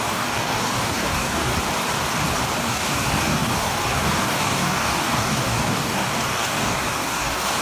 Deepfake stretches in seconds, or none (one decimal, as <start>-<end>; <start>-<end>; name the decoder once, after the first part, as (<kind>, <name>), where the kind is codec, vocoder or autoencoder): 0.0-1.5 (codec, DAC); 2.6-7.6